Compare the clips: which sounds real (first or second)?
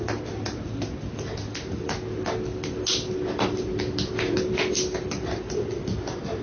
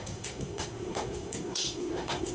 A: first